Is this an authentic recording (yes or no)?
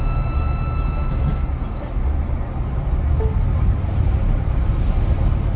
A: yes